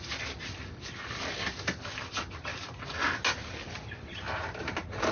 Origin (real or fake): real